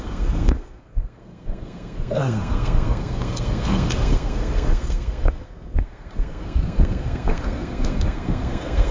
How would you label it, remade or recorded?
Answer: remade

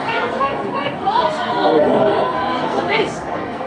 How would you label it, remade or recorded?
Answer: remade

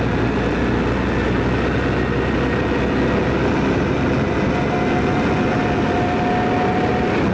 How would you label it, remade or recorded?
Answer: recorded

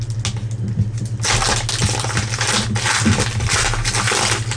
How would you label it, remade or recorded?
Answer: recorded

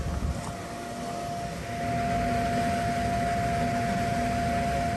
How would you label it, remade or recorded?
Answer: recorded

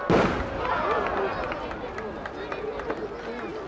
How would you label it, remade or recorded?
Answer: recorded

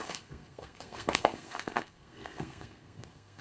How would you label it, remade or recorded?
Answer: remade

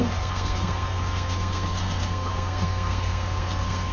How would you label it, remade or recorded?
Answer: remade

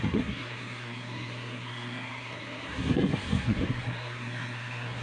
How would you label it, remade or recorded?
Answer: remade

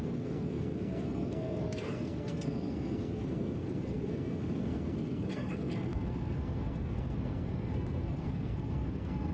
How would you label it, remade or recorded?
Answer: remade